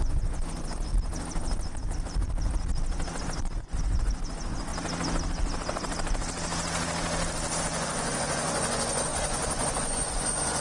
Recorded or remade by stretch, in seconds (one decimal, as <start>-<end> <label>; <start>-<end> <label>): 0.0-0.9 remade; 0.9-3.2 recorded; 3.2-4.7 remade; 4.7-7.6 recorded; 7.6-10.6 remade